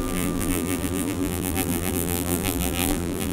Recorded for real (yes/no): no